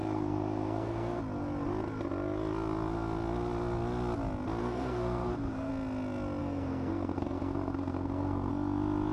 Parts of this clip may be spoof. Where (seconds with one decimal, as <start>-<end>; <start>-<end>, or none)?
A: 0.0-1.2; 4.6-5.7; 6.4-8.5